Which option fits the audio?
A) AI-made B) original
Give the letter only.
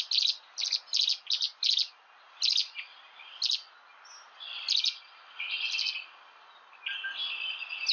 B